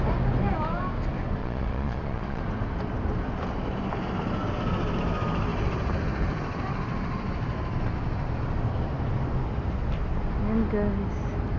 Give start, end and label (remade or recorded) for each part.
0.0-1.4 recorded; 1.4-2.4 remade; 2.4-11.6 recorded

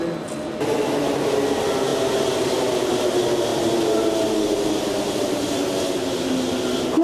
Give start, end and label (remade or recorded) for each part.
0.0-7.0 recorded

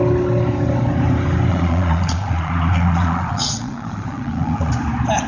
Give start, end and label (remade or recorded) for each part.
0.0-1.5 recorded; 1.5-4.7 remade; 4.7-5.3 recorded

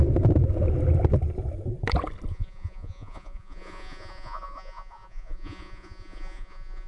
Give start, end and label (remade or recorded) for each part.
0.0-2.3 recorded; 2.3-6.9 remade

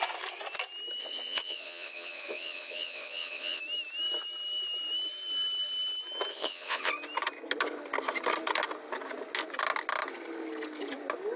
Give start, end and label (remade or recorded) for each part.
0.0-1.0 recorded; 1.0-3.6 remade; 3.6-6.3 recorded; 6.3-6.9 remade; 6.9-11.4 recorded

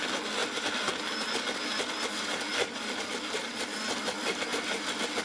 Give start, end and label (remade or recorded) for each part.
0.0-5.2 recorded

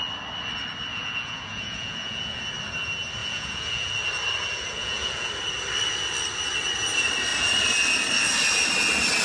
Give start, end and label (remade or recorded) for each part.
0.0-0.9 recorded; 0.9-2.4 remade; 2.4-3.2 recorded; 3.2-3.9 remade; 3.9-4.8 recorded; 4.8-5.3 remade; 5.3-9.2 recorded